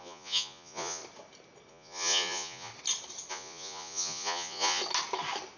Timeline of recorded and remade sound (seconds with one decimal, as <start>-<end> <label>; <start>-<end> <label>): 0.0-1.0 remade; 1.0-1.7 recorded; 1.7-2.7 remade; 2.7-3.3 recorded; 3.3-4.8 remade; 4.8-5.6 recorded